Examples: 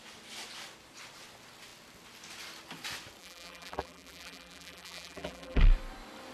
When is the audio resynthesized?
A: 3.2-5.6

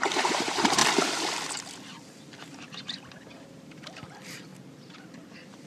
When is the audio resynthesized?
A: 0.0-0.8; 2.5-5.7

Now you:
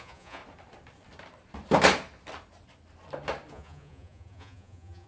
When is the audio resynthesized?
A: 0.0-0.4; 3.5-5.1